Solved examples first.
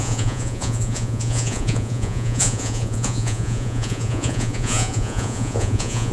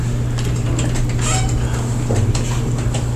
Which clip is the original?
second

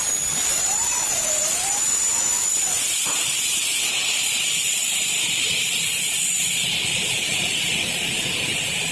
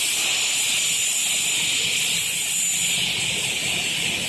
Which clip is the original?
second